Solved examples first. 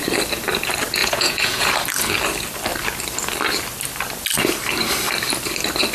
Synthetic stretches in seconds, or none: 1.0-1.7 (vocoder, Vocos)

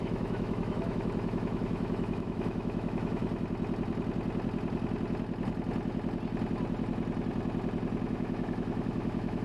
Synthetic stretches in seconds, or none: 0.0-3.2 (autoencoder, DAC-VAE); 8.1-9.4

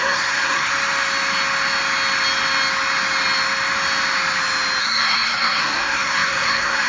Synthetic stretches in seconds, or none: 0.0-0.7 (codec, SNAC); 4.8-6.9

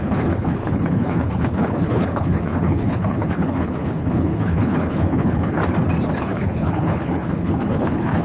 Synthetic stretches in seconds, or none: 0.0-5.6 (codec, HILCodec); 6.2-8.2